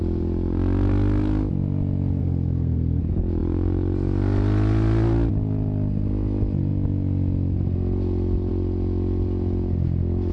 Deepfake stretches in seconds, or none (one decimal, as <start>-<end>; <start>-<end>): 2.2-3.0